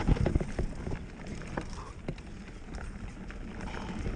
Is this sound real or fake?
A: real